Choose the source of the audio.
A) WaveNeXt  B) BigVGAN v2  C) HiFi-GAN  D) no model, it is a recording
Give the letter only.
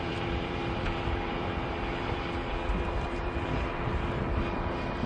B